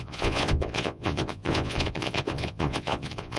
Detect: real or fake fake